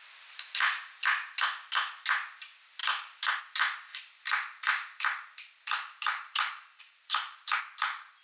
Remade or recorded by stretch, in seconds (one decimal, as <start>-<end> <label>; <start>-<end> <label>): 0.0-2.8 recorded; 2.8-3.4 remade; 3.4-3.9 recorded; 3.9-7.6 remade; 7.6-8.2 recorded